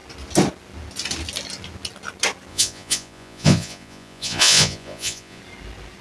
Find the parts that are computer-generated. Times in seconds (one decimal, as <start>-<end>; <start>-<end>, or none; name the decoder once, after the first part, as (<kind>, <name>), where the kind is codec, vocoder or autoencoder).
2.5-5.4 (vocoder, Vocos)